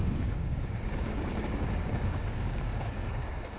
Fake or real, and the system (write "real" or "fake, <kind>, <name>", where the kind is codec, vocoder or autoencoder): fake, codec, DAC